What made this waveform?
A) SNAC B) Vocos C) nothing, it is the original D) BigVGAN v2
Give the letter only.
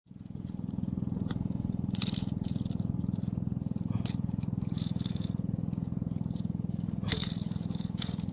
B